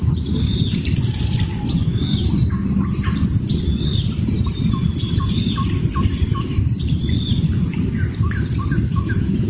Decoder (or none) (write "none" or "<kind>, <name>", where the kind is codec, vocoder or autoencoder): none